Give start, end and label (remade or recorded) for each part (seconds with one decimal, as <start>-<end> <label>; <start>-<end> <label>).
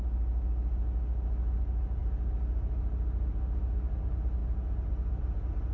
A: 0.0-4.4 recorded; 4.4-5.2 remade; 5.2-5.7 recorded